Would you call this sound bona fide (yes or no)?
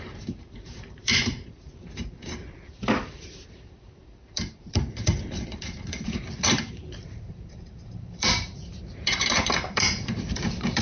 no